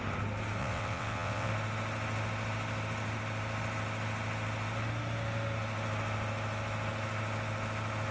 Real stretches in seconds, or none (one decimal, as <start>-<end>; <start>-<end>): 0.0-0.6; 1.5-8.1